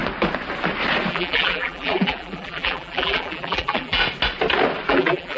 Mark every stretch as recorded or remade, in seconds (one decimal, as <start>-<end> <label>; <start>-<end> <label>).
0.0-1.1 recorded; 1.1-4.0 remade; 4.0-4.9 recorded; 4.9-5.4 remade

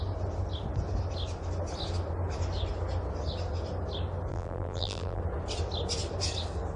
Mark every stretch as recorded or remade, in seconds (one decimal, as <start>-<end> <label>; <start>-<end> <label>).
0.0-4.3 recorded; 4.3-5.2 remade; 5.2-6.8 recorded

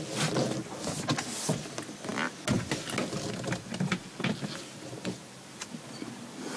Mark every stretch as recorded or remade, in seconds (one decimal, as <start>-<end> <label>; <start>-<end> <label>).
0.0-6.6 recorded

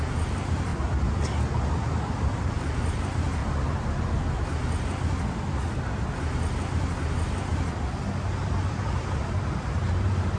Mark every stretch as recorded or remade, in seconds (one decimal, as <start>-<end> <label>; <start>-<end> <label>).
0.0-0.7 remade; 0.7-2.5 recorded; 2.5-3.4 remade; 3.4-7.1 recorded; 7.1-7.5 remade; 7.5-8.6 recorded; 8.6-10.4 remade

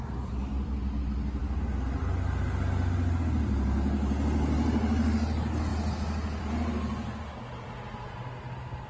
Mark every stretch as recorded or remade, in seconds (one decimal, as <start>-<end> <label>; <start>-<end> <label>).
0.0-8.9 recorded

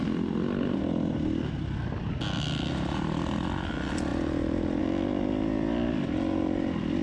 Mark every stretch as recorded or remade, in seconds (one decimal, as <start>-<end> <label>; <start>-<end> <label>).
0.0-7.0 recorded